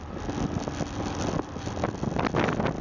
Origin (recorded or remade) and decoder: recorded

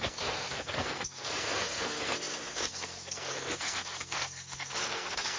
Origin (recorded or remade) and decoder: remade, codec, SNAC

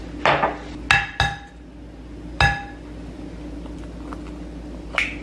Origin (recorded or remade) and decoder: recorded